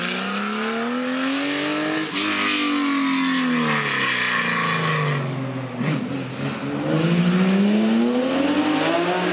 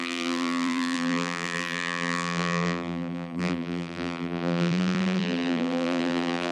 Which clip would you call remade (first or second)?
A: second